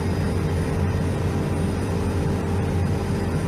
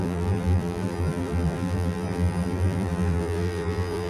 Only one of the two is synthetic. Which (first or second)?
second